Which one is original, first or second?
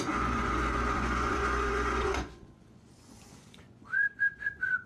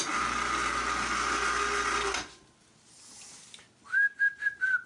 second